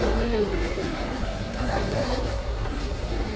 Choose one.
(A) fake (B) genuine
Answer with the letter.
A